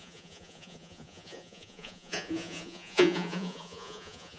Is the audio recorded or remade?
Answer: remade